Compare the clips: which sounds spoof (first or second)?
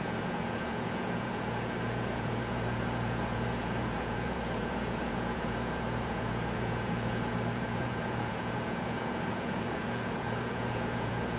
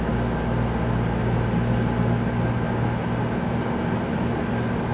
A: first